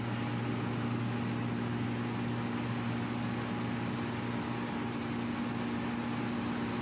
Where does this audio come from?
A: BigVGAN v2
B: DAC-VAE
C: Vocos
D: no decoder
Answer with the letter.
D